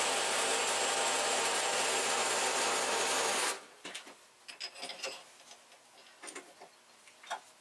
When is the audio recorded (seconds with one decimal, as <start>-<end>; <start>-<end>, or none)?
0.0-7.6